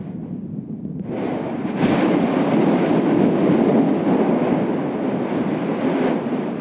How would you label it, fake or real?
real